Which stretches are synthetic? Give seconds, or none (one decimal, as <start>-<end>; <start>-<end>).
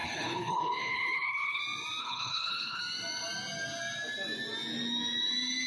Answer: 0.0-1.6; 2.0-2.8